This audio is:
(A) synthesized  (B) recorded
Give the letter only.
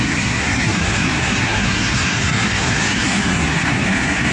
A